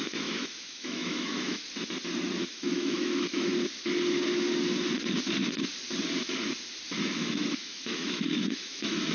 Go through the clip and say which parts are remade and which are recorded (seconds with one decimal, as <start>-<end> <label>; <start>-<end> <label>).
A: 0.0-1.6 remade; 1.6-2.5 recorded; 2.5-3.5 remade; 3.5-7.0 recorded; 7.0-9.1 remade